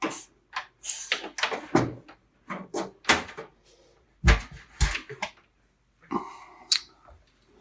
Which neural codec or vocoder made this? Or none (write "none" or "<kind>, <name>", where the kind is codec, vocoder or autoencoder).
none